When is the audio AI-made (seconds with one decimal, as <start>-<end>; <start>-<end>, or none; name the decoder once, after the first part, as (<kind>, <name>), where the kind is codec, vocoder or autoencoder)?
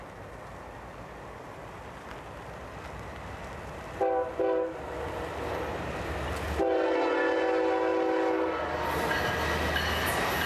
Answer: none